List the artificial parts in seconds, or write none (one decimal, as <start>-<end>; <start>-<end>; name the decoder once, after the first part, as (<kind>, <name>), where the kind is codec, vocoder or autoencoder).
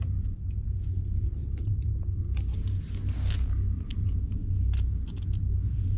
1.4-2.4 (vocoder, BigVGAN v2); 3.9-4.4